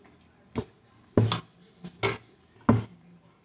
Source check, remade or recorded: recorded